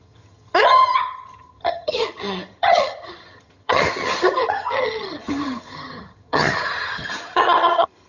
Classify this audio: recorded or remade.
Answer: remade